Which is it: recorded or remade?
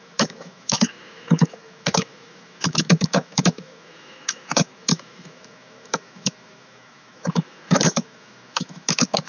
remade